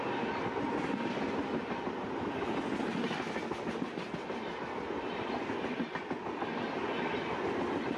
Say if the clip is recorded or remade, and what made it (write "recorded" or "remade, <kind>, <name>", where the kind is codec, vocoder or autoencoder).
recorded